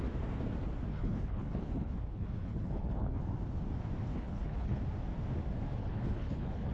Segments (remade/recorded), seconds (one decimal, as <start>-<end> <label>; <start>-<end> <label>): 0.0-0.9 recorded; 0.9-3.2 remade; 3.2-4.1 recorded; 4.1-4.8 remade; 4.8-5.8 recorded; 5.8-6.7 remade